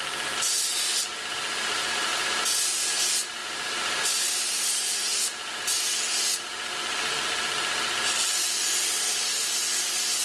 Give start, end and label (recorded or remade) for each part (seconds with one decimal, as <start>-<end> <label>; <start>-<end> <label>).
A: 0.0-10.2 recorded

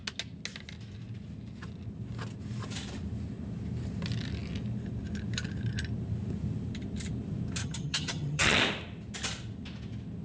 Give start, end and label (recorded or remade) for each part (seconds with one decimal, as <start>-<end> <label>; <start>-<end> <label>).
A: 0.0-7.6 recorded; 7.6-8.6 remade; 8.6-10.2 recorded

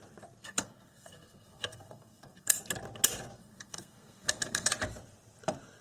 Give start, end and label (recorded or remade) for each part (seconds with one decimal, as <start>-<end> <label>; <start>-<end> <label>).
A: 0.0-0.4 recorded; 0.4-2.6 remade; 2.6-3.4 recorded; 3.4-4.7 remade; 4.7-5.8 recorded

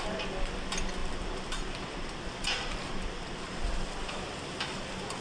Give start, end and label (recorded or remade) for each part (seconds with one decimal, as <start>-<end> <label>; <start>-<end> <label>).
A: 0.0-1.0 recorded; 1.0-4.1 remade; 4.1-5.2 recorded

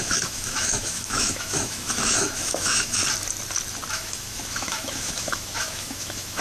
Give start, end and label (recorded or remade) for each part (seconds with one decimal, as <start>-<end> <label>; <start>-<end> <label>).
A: 0.0-3.0 remade; 3.0-3.9 recorded; 3.9-6.4 remade

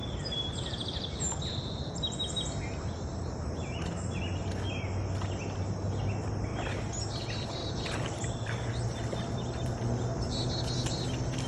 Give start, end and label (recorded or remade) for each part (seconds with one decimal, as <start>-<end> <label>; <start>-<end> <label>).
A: 0.0-4.2 remade; 4.2-6.5 recorded; 6.5-7.0 remade; 7.0-7.6 recorded; 7.6-10.6 remade; 10.6-11.5 recorded